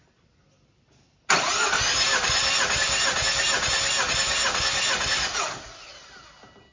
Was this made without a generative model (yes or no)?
yes